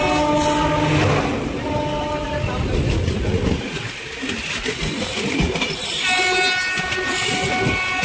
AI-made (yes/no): no